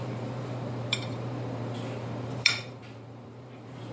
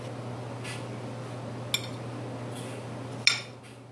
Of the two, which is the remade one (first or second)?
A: first